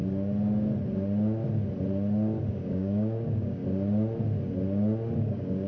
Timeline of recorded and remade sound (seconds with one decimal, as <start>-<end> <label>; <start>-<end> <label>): 0.0-2.5 recorded; 2.5-3.6 remade; 3.6-5.2 recorded; 5.2-5.7 remade